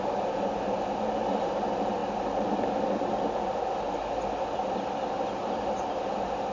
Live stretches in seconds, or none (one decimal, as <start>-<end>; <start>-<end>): 0.0-6.5